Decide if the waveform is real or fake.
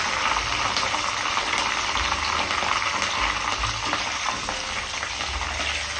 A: real